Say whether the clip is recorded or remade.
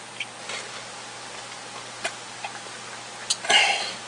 recorded